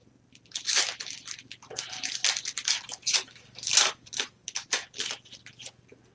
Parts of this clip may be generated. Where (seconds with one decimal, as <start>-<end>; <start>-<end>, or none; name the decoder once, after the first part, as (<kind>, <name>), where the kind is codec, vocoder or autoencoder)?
none